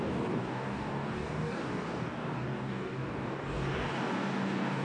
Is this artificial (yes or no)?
yes